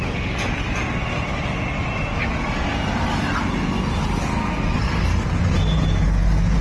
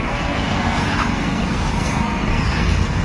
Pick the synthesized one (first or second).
second